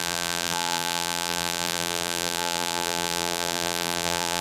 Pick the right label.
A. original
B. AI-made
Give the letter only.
B